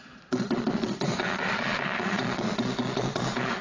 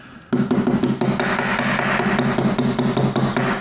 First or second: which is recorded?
second